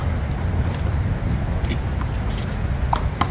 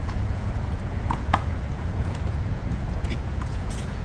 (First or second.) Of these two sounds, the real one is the first